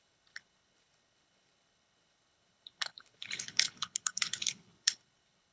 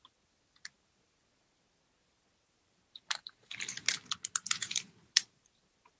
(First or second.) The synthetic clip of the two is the first